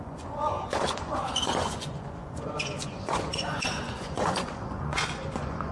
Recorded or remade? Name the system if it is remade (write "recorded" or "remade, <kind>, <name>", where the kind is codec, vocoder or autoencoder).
remade, vocoder, Vocos